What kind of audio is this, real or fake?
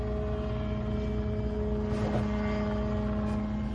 real